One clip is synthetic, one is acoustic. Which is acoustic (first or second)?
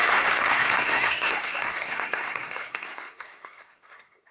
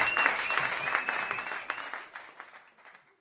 second